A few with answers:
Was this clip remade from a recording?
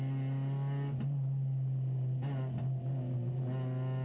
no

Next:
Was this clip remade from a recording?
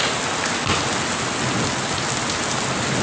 no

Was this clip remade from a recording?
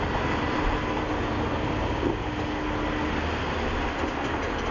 no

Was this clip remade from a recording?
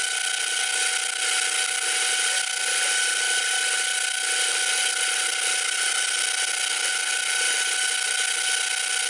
no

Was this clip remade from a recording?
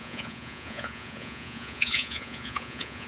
yes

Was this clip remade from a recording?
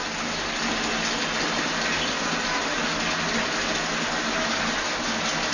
no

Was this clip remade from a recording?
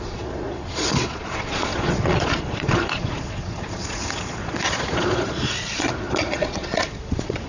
yes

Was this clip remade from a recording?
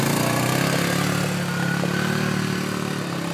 no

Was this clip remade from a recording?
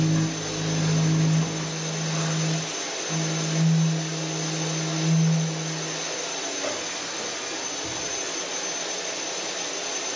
no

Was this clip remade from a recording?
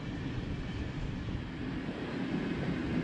no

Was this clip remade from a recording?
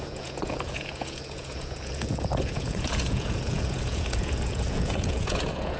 yes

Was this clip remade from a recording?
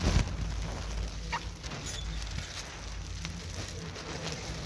no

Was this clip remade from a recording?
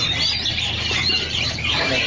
no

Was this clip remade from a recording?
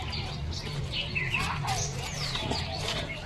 no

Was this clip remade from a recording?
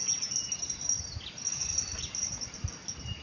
no